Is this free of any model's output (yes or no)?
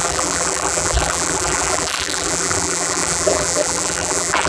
no